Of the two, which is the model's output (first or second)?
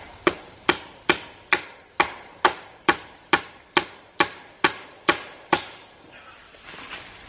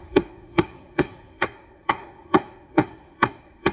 second